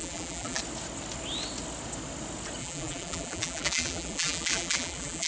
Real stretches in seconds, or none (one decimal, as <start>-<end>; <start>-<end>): 0.6-2.6